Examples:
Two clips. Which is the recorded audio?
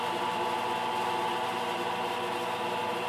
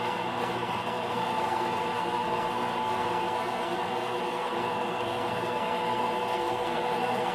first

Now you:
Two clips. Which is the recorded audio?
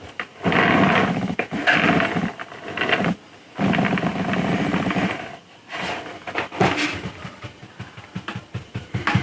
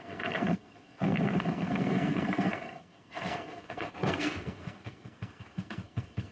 first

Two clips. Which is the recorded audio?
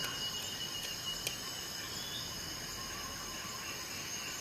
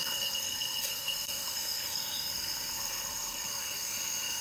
first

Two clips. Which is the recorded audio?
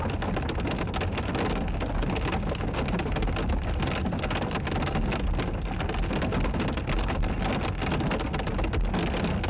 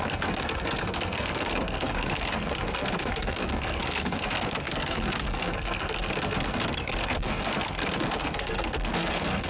first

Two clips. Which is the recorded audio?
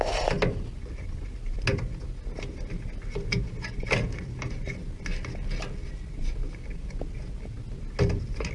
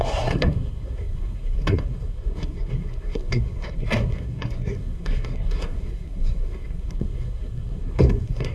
first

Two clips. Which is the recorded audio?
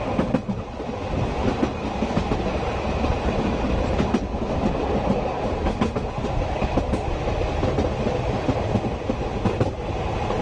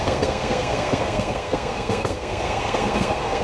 first